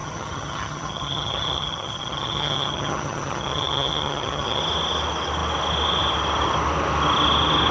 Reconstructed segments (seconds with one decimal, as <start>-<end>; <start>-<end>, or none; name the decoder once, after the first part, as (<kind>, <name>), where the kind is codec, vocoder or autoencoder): 0.0-4.6 (vocoder, HiFi-GAN)